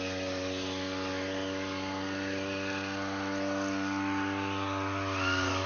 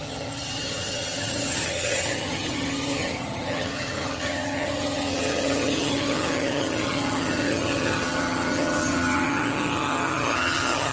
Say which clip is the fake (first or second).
second